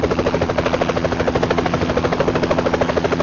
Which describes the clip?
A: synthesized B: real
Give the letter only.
A